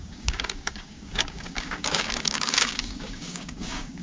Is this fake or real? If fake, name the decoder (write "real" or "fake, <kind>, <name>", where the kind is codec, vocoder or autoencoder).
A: fake, codec, DAC